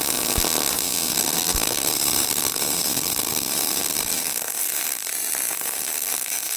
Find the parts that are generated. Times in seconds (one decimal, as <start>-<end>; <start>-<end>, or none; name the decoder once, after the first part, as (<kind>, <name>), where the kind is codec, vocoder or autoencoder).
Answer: 1.1-5.1 (codec, SNAC); 5.5-6.6